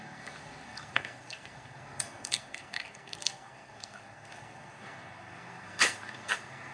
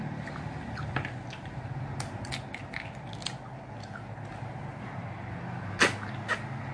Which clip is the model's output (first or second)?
first